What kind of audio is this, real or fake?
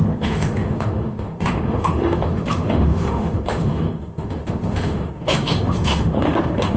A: fake